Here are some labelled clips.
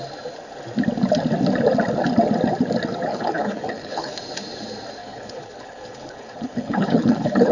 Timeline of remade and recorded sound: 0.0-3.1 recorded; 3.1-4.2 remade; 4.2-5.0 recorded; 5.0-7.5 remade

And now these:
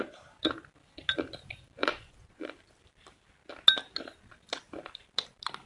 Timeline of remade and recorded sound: 0.0-1.8 recorded; 1.8-2.6 remade; 2.6-5.7 recorded

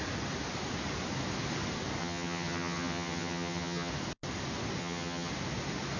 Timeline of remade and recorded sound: 0.0-2.0 recorded; 2.0-3.9 remade; 3.9-4.8 recorded; 4.8-5.3 remade; 5.3-6.0 recorded

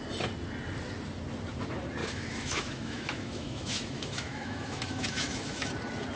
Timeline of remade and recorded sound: 0.0-2.0 recorded; 2.0-5.7 remade; 5.7-6.2 recorded

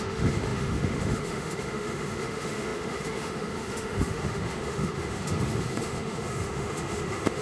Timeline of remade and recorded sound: 0.0-7.4 remade